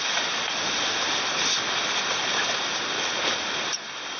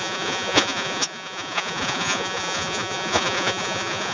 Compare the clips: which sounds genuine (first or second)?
first